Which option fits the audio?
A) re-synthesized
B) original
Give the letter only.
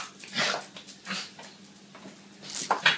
B